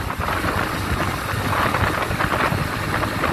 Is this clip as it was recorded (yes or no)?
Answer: yes